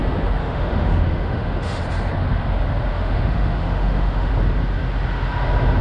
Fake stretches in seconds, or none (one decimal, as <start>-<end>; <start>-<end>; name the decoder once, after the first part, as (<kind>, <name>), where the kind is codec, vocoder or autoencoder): 0.4-1.8 (autoencoder, DAC-VAE); 2.9-4.3